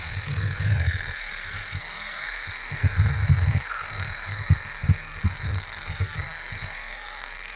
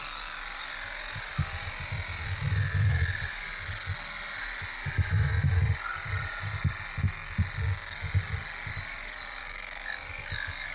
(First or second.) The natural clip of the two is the second